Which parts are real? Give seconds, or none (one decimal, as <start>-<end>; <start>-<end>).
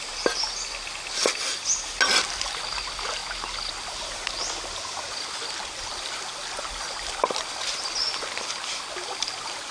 0.0-9.7